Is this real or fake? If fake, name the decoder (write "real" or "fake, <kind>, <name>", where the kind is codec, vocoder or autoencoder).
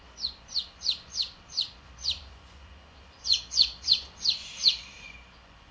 fake, vocoder, Vocos